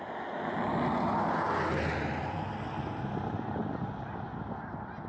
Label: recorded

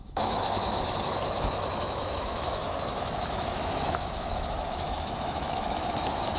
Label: remade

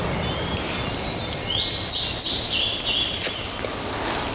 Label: recorded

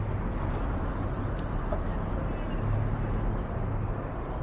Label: recorded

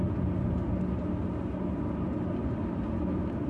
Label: recorded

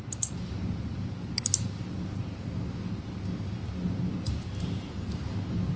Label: recorded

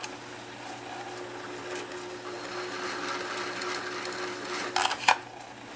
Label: recorded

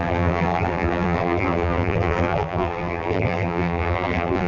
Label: remade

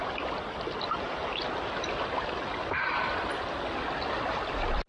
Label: recorded